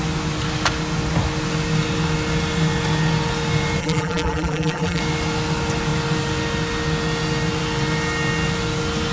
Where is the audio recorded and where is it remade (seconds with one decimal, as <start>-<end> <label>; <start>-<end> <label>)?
0.0-3.8 recorded; 3.8-5.0 remade; 5.0-9.1 recorded